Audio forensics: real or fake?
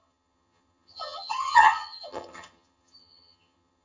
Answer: fake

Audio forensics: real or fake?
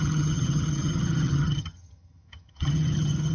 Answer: fake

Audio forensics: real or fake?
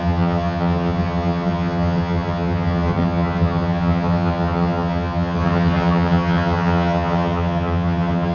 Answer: fake